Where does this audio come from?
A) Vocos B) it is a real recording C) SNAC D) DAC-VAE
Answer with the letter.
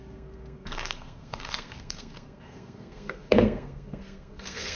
C